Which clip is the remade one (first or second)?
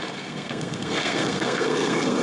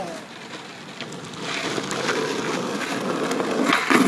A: first